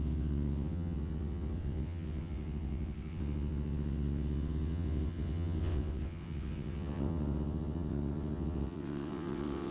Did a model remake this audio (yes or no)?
yes